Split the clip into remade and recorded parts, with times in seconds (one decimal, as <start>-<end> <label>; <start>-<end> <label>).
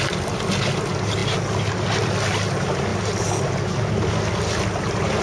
0.0-5.2 recorded